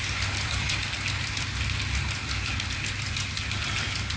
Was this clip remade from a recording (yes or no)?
no